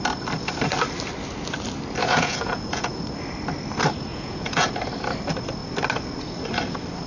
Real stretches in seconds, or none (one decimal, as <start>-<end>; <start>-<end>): 0.0-2.0; 3.0-4.1; 4.7-7.1